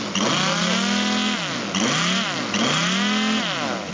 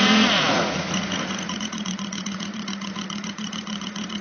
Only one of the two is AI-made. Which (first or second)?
second